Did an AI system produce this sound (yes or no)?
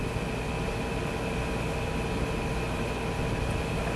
no